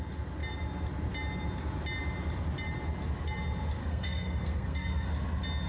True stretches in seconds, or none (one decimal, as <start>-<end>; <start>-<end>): 0.0-3.8; 5.1-5.7